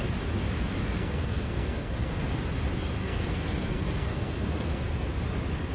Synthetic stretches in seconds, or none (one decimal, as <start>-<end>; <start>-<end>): 0.8-2.3; 3.0-5.1